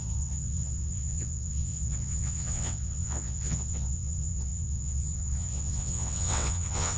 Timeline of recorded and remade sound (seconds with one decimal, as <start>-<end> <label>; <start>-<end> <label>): 0.0-7.0 remade